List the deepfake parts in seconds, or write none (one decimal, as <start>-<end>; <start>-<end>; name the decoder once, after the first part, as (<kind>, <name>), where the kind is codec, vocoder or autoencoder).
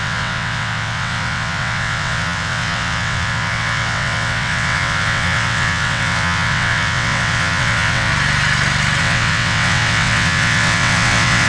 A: 0.0-8.1 (vocoder, WaveNeXt); 9.0-11.5